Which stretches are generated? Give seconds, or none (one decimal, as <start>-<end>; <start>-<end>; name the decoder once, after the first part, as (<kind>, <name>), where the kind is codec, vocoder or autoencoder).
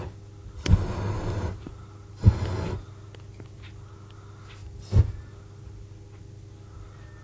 none